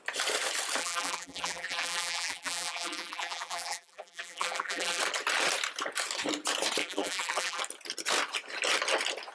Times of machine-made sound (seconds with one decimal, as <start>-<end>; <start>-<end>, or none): 0.8-5.0; 6.8-7.6

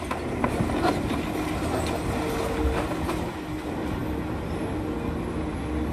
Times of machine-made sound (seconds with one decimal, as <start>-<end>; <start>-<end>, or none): none

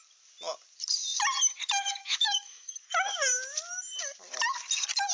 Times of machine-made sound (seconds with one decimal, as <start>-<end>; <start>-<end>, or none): 2.0-2.7